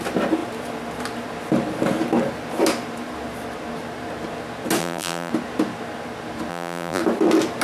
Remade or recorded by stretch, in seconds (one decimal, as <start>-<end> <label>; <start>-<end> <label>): 0.0-4.8 recorded; 4.8-5.3 remade; 5.3-6.5 recorded; 6.5-7.0 remade; 7.0-7.6 recorded